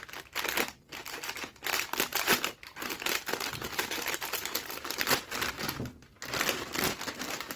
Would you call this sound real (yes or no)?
yes